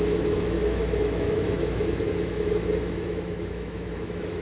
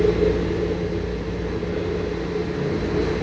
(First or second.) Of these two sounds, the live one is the second